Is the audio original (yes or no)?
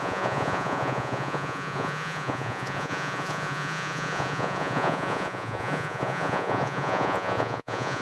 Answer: no